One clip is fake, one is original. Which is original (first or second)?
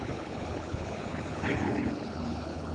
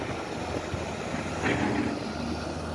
second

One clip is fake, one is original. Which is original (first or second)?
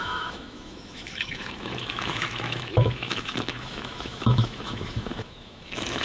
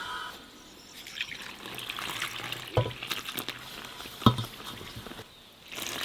second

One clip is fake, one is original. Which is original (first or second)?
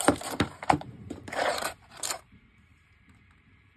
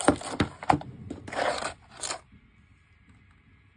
second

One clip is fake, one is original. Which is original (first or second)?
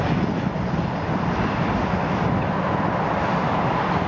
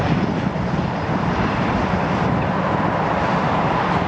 first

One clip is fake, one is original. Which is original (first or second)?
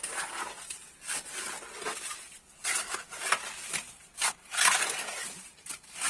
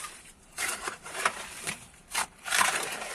first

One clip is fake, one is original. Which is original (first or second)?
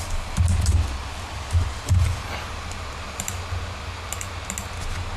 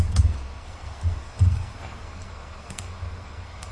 first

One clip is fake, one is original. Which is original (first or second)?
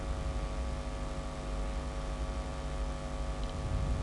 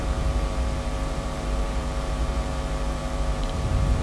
first